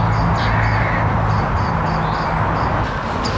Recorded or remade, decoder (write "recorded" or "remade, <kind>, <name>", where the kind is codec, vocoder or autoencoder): recorded